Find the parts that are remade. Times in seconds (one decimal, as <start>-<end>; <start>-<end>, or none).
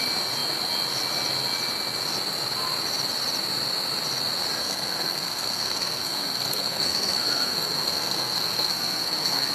4.6-9.5